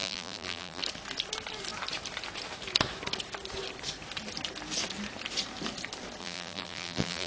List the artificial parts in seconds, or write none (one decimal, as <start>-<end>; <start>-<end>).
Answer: 0.0-0.8; 6.2-7.3